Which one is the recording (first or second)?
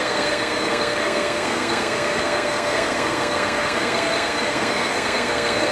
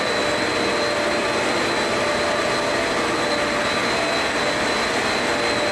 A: second